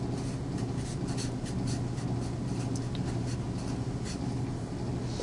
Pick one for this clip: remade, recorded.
recorded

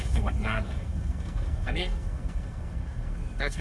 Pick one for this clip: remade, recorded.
remade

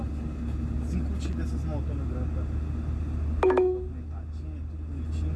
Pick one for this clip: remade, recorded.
recorded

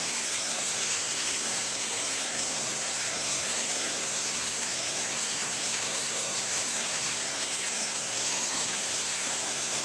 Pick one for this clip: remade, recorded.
remade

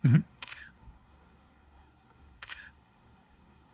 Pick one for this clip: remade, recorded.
remade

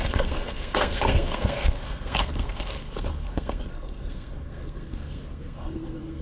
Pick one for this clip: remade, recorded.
remade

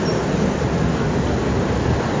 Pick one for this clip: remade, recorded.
recorded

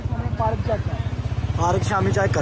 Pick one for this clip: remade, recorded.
recorded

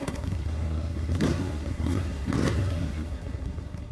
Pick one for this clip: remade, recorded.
remade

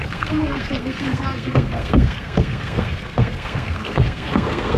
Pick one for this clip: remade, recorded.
remade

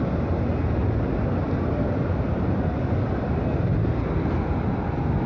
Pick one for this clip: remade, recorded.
recorded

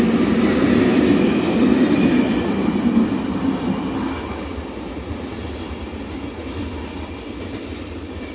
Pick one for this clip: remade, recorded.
recorded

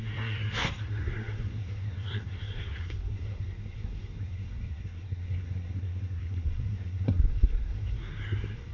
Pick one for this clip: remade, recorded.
remade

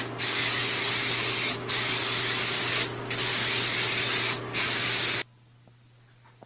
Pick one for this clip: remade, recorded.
recorded